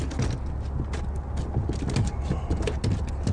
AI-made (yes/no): no